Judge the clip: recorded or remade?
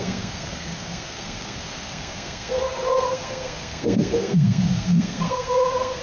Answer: remade